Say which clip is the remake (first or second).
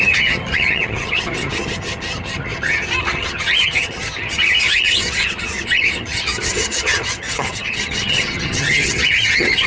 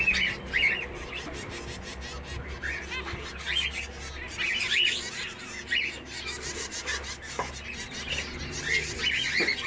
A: first